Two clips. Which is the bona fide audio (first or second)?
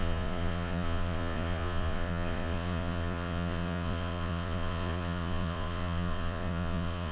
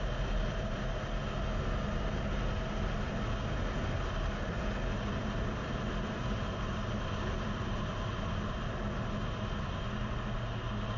second